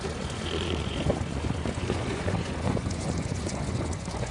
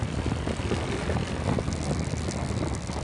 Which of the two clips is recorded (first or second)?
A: second